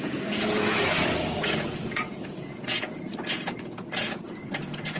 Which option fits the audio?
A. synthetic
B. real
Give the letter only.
A